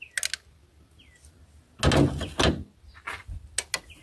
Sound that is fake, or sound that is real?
real